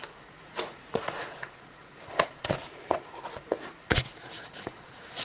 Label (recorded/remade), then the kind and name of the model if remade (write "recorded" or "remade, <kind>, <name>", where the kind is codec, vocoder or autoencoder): remade, vocoder, Vocos